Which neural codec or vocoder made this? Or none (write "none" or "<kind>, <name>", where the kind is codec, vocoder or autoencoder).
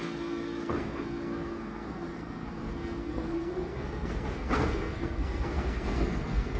codec, SNAC